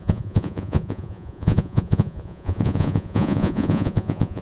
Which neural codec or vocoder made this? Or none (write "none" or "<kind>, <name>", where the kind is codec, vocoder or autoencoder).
vocoder, Vocos